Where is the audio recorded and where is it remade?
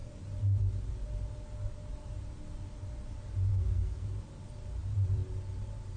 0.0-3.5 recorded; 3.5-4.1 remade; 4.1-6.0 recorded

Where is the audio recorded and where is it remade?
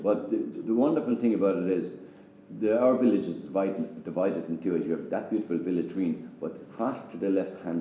0.0-1.1 recorded; 1.1-1.8 remade; 1.8-7.8 recorded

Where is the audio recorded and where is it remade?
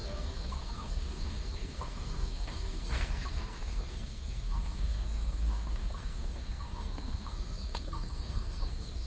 0.0-9.1 remade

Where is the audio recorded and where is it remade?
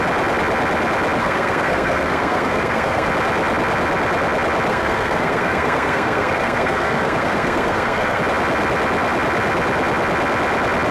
0.0-1.2 recorded; 1.2-3.1 remade; 3.1-4.7 recorded; 4.7-8.2 remade; 8.2-10.9 recorded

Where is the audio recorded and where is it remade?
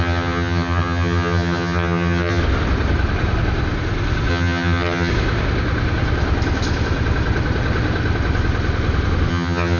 0.0-2.4 remade; 2.4-4.3 recorded; 4.3-5.1 remade; 5.1-9.3 recorded; 9.3-9.8 remade